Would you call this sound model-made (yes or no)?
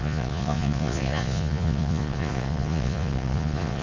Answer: yes